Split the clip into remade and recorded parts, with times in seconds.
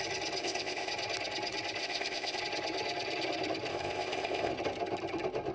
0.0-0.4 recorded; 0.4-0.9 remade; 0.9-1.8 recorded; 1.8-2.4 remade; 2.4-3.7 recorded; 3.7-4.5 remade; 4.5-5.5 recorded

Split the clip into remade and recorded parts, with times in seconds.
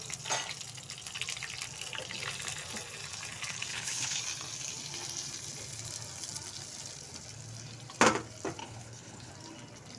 0.0-3.7 recorded; 3.7-4.2 remade; 4.2-8.6 recorded; 8.6-9.3 remade; 9.3-10.0 recorded